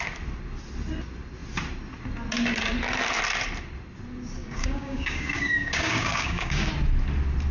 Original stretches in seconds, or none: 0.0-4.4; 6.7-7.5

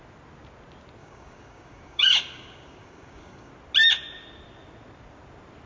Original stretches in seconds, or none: 0.0-1.0; 3.5-5.7

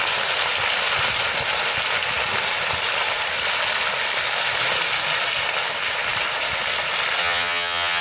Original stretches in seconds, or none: 0.0-7.2

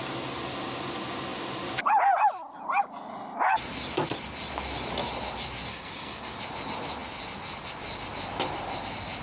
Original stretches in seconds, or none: 0.0-5.7; 6.4-9.2

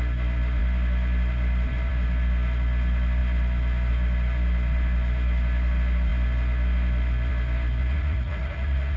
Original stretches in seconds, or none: 0.0-7.8

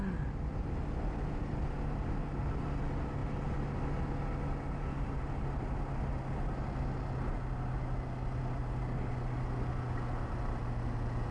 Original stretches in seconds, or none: 0.0-11.3

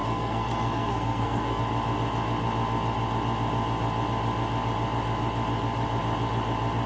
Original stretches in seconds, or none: 1.6-6.9